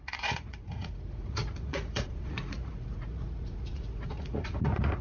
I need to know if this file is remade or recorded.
remade